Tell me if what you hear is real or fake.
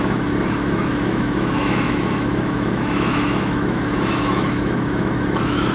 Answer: fake